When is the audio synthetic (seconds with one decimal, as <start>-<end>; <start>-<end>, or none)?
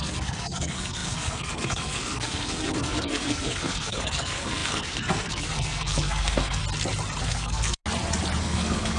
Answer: 0.0-6.6; 7.2-7.8; 8.4-9.0